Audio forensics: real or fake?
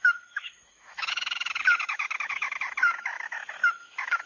fake